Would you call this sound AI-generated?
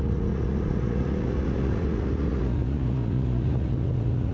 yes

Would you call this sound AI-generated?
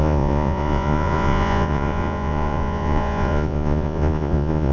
yes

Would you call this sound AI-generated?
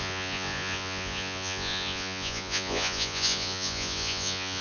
yes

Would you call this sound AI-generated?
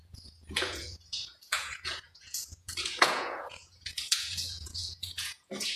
yes